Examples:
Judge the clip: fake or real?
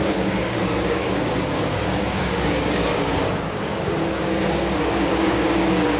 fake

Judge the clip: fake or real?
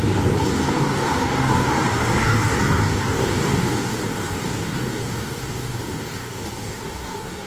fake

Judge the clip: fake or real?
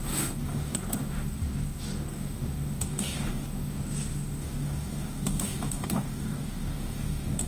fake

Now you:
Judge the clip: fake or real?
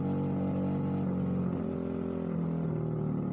real